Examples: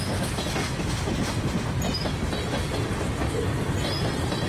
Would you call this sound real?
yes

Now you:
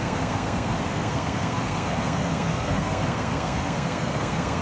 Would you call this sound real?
no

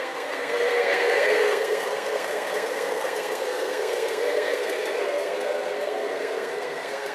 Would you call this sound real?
no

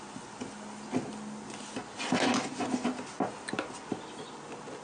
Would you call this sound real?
yes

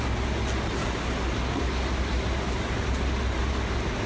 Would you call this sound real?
yes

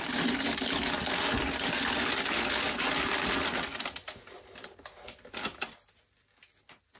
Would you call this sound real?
yes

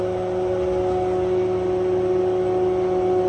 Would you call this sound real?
yes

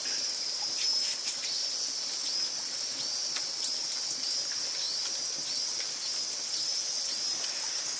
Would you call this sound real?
yes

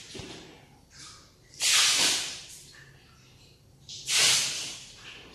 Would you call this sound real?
yes